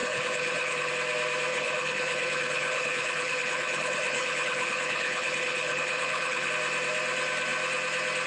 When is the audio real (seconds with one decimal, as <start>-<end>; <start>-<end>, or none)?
0.9-1.5; 6.5-8.3

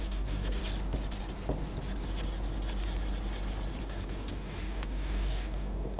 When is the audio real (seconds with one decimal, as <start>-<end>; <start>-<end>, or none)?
0.6-3.8